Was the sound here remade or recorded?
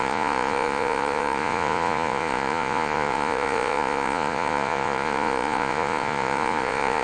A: remade